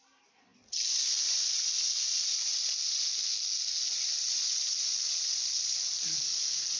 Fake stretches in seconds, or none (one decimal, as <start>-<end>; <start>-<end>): none